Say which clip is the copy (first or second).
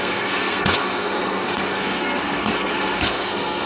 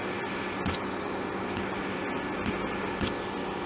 first